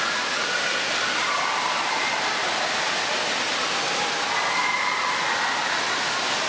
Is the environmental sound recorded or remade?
recorded